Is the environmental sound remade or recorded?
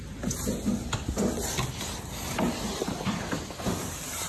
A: recorded